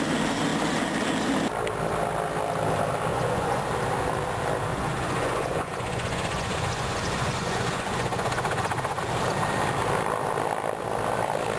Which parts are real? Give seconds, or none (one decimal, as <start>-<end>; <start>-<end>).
0.0-3.1; 3.6-4.7; 9.0-11.6